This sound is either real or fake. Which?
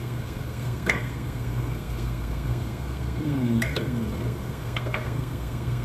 fake